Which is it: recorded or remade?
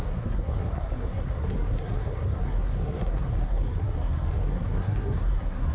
remade